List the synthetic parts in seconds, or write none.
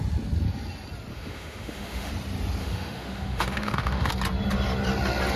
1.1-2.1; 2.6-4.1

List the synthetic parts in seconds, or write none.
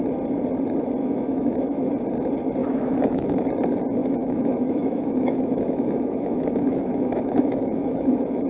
1.0-1.9; 2.6-3.5; 4.0-8.5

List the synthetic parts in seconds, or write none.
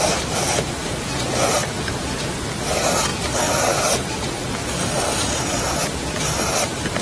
none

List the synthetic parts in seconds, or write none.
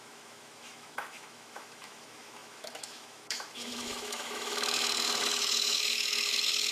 0.0-6.7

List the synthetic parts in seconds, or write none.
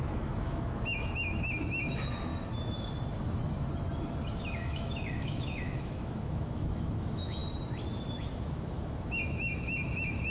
0.0-2.3; 4.4-7.4; 8.2-10.3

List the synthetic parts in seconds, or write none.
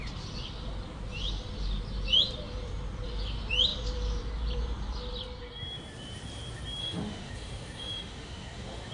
6.8-8.9